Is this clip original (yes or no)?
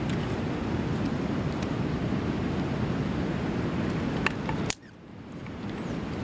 yes